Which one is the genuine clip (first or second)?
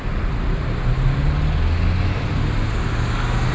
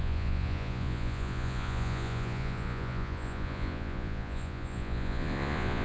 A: first